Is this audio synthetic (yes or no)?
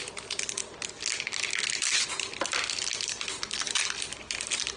no